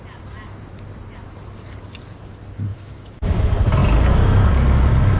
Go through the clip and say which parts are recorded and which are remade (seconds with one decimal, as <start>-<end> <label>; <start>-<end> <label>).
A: 0.0-2.7 recorded; 2.7-3.4 remade; 3.4-5.2 recorded